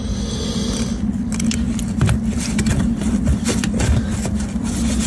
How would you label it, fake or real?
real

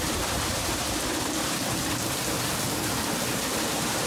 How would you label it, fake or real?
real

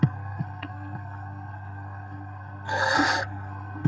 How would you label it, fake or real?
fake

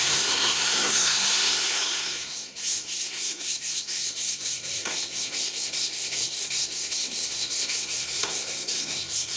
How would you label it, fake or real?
fake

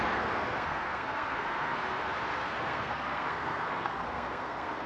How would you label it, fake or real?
fake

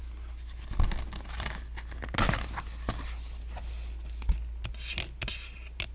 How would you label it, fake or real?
real